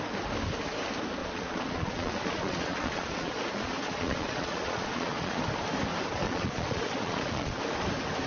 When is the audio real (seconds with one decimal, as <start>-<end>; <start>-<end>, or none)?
0.0-1.2; 5.4-6.2; 7.6-8.3